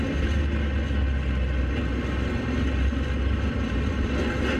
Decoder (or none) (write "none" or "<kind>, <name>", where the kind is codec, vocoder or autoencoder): none